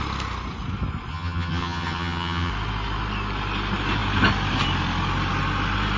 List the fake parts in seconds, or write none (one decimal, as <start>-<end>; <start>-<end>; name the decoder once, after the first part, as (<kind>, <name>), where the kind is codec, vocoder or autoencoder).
1.1-2.5 (vocoder, HiFi-GAN)